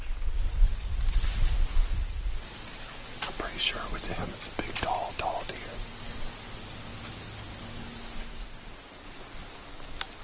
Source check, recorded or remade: recorded